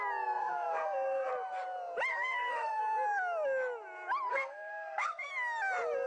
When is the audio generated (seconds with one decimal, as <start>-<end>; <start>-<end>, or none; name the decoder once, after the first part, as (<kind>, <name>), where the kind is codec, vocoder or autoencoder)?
0.4-1.3 (codec, SNAC); 2.1-2.8; 4.3-5.3